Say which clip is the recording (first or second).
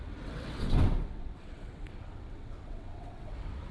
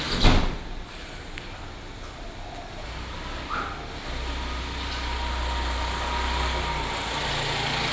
second